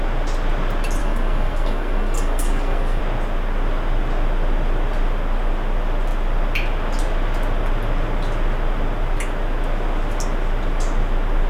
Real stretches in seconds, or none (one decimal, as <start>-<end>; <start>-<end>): 0.0-1.0; 3.0-11.5